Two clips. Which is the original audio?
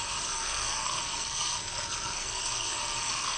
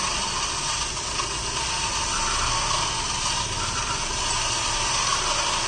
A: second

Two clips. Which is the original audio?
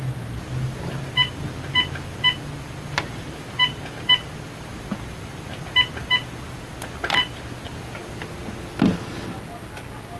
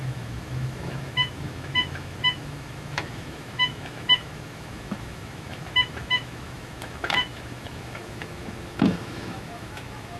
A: first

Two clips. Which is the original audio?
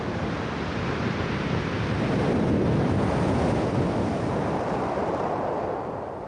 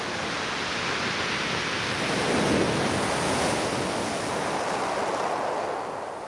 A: second